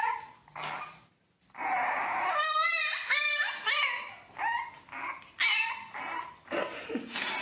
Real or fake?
real